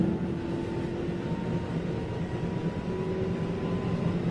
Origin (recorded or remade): recorded